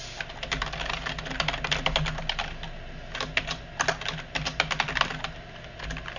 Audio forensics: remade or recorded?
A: recorded